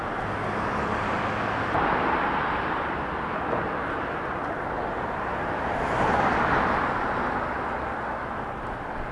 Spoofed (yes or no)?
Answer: no